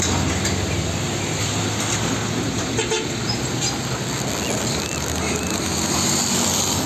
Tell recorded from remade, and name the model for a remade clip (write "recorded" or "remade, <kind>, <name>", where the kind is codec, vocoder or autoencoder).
recorded